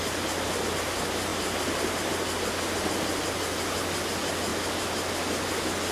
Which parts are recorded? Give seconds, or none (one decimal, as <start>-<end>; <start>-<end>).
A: 0.0-5.9